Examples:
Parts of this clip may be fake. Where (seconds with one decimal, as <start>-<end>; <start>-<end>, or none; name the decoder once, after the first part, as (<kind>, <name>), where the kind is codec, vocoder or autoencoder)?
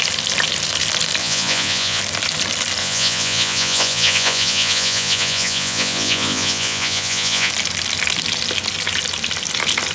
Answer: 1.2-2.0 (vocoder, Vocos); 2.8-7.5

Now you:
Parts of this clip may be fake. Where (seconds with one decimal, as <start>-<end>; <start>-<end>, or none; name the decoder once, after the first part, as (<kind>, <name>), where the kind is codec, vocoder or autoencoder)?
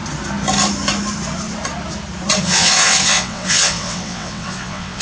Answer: 2.4-5.0 (vocoder, WaveNeXt)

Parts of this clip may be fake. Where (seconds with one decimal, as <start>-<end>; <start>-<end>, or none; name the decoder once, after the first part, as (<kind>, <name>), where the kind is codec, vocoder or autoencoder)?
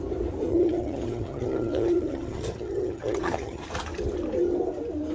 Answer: 0.5-3.6 (vocoder, HiFi-GAN)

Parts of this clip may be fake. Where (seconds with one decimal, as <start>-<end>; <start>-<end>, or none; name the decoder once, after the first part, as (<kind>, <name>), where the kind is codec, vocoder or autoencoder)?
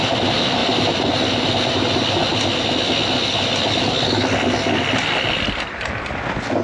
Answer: none